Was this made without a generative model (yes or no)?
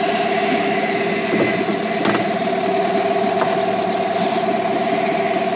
yes